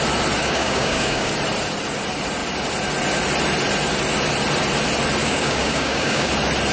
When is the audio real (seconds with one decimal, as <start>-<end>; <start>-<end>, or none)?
0.0-0.4; 1.3-5.2; 6.3-6.7